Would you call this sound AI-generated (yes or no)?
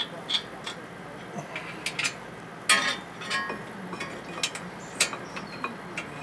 no